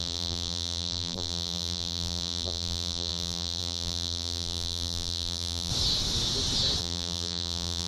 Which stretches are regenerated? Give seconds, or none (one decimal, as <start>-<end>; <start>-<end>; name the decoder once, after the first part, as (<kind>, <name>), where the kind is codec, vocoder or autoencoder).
0.0-5.7 (vocoder, BigVGAN v2); 6.8-7.9